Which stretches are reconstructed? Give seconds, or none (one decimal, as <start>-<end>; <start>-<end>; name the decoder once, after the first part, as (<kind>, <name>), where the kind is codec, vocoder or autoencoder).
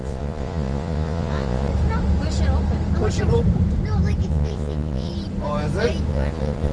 0.0-1.7 (vocoder, Vocos); 4.3-5.1; 6.1-6.7